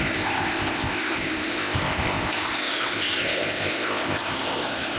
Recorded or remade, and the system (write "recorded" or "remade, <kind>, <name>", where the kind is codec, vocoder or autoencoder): remade, codec, ZipCodec